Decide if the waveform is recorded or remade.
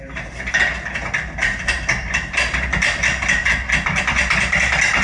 recorded